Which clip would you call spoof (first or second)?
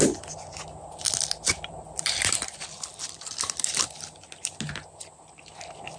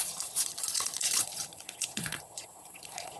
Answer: second